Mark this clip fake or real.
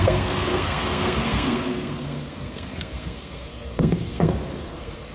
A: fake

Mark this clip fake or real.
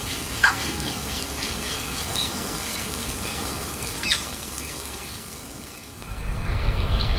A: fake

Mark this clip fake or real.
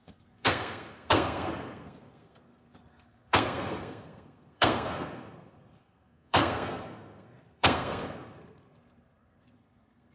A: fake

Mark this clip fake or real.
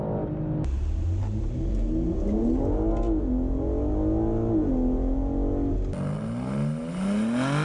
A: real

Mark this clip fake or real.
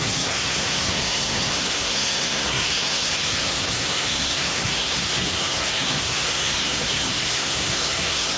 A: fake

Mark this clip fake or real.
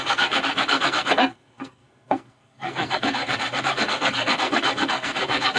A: fake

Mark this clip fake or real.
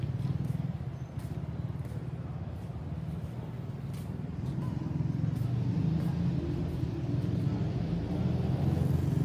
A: real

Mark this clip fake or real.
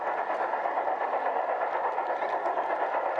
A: real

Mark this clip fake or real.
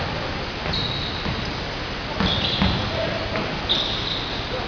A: real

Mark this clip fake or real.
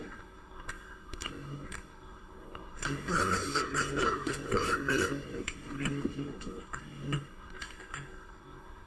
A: fake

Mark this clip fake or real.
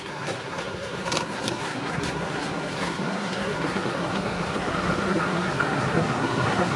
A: fake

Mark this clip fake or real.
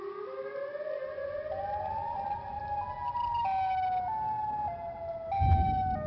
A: real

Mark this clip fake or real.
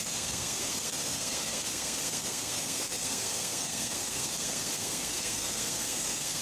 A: fake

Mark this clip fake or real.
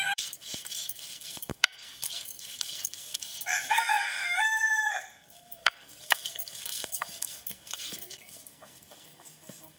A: fake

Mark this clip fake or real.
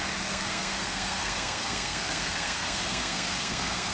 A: fake